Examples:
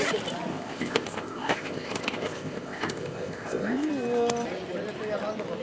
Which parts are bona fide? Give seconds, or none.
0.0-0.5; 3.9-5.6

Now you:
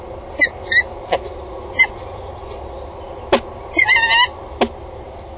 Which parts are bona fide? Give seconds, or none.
0.0-5.4

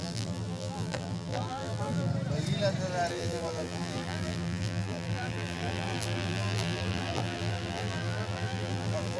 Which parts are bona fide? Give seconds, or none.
2.1-3.1

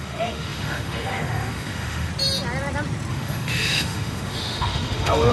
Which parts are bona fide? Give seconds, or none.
2.1-3.1

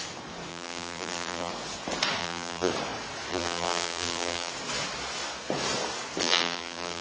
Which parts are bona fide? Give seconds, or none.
0.0-0.5; 1.5-2.2; 2.7-3.3; 4.5-6.2

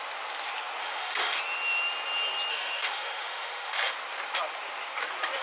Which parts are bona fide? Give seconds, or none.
0.0-0.8; 1.4-2.5; 3.9-5.4